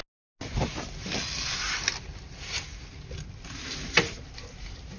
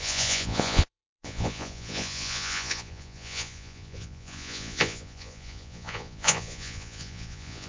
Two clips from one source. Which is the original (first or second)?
first